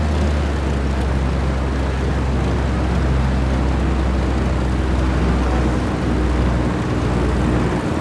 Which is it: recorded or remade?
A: recorded